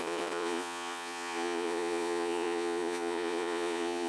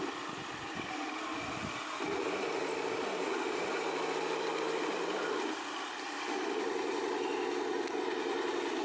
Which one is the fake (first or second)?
first